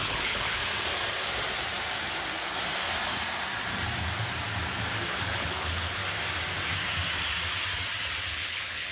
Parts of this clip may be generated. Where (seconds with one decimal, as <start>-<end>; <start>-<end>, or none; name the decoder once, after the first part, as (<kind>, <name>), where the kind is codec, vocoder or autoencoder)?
0.0-0.6 (codec, HILCodec); 5.2-6.0; 8.3-8.9